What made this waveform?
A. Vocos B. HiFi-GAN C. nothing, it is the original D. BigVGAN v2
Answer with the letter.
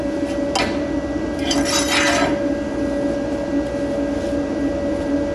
C